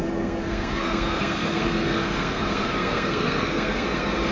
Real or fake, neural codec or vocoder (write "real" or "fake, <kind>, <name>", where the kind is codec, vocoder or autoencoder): fake, codec, SNAC